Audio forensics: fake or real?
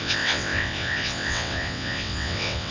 fake